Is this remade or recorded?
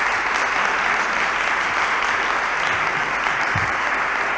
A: recorded